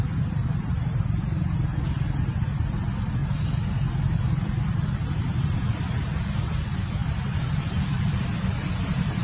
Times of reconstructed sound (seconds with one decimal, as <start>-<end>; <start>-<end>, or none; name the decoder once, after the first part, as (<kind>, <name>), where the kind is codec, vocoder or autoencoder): 0.0-3.2 (vocoder, BigVGAN v2); 3.9-9.2